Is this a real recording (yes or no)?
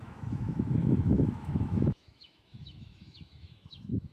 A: no